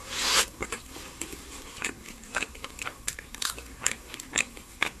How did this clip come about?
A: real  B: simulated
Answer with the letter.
B